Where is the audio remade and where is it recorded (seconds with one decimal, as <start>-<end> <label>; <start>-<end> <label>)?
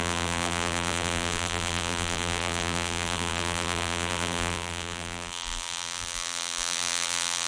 0.0-7.5 remade